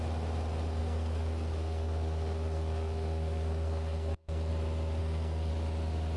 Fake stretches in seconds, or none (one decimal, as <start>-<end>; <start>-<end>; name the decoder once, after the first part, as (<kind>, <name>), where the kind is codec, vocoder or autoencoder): 0.8-4.5 (codec, SNAC); 5.0-5.5